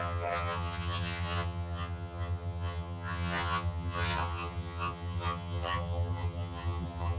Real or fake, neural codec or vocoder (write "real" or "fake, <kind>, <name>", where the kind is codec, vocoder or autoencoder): fake, vocoder, HiFi-GAN